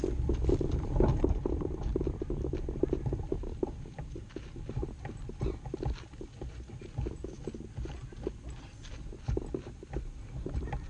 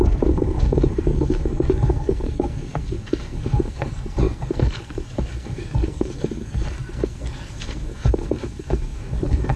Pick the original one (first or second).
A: first